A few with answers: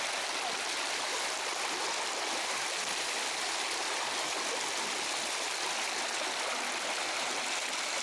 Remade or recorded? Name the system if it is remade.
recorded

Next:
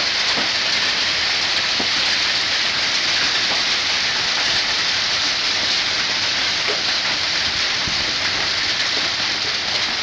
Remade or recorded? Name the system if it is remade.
remade, vocoder, BigVGAN v2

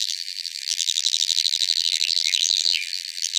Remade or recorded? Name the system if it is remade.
remade, vocoder, BigVGAN v2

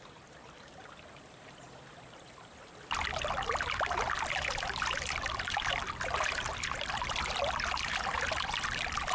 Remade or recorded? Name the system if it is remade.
remade, vocoder, BigVGAN v2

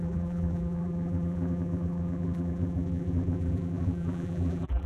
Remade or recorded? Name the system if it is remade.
remade, vocoder, BigVGAN v2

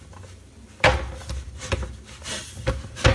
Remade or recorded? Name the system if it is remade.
recorded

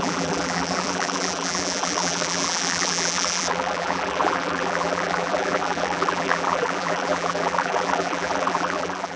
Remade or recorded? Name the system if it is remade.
remade, vocoder, BigVGAN v2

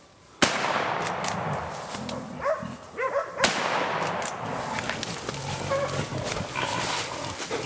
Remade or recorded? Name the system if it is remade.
recorded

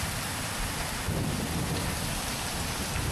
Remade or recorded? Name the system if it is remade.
recorded